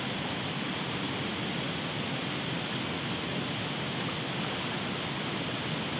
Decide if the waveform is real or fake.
real